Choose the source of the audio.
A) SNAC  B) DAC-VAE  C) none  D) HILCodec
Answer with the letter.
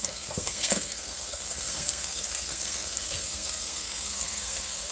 A